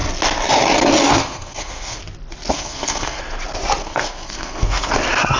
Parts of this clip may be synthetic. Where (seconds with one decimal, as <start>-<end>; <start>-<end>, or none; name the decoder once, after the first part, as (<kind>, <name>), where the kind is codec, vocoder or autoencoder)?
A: 1.1-2.0 (codec, SNAC); 2.5-3.2; 3.8-4.9